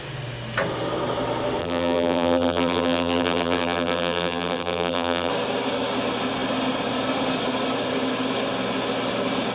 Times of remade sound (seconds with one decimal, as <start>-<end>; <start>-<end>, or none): 1.6-5.3